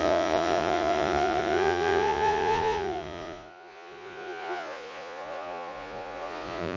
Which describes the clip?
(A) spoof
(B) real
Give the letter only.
A